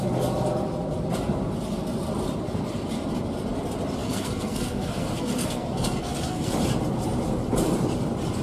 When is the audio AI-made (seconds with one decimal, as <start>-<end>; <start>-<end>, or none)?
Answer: 4.0-6.5